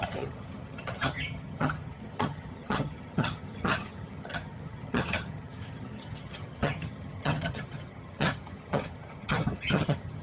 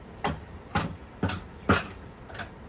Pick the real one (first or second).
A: second